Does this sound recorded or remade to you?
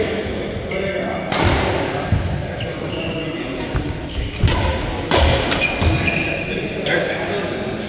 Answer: recorded